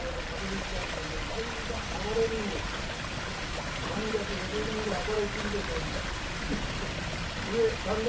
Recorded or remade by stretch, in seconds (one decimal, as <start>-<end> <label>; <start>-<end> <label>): 0.0-8.1 recorded